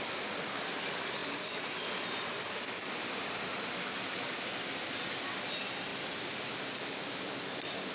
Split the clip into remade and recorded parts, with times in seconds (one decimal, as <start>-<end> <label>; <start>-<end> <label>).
0.0-7.9 recorded

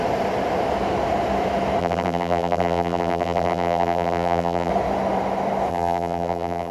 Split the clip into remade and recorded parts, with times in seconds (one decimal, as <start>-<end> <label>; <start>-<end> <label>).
0.0-1.8 recorded; 1.8-4.7 remade; 4.7-5.7 recorded; 5.7-6.7 remade

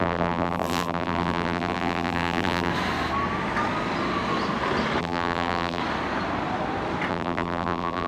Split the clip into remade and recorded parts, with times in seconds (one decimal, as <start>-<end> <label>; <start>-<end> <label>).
0.0-2.7 remade; 2.7-5.0 recorded; 5.0-5.8 remade; 5.8-7.1 recorded; 7.1-8.1 remade

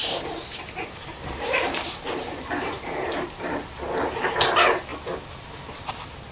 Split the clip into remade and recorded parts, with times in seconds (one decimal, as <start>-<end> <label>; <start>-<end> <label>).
0.0-3.8 remade; 3.8-6.3 recorded